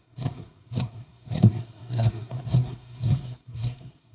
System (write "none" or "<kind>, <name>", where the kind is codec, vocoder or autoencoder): codec, SNAC